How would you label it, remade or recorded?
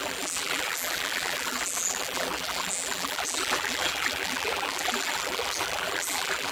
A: remade